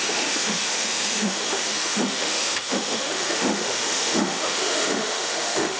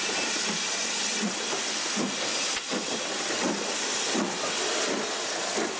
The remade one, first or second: first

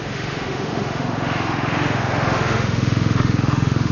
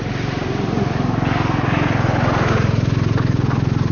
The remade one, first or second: first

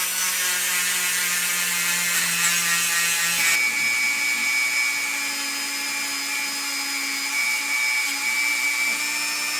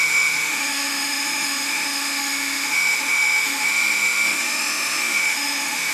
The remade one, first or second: second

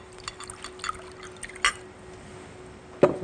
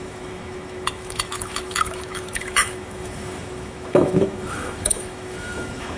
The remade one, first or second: second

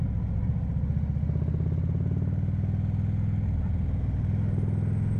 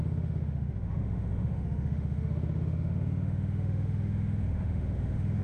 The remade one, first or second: second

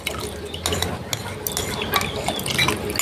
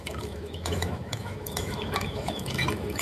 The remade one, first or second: second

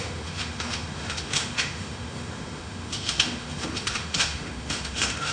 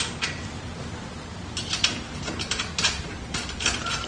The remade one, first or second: first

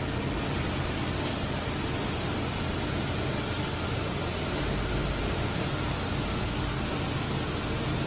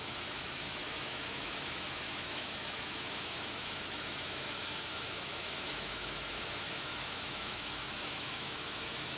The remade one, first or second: second